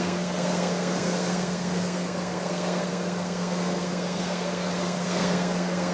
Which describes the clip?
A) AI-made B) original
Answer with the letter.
A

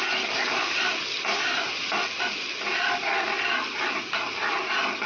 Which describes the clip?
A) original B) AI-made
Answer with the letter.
A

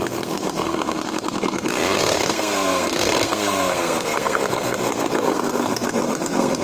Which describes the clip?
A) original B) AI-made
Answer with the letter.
B